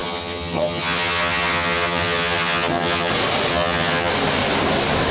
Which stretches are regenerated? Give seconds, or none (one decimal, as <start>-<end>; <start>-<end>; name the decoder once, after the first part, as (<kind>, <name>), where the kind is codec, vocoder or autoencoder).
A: 0.0-3.1 (vocoder, HiFi-GAN); 3.5-4.1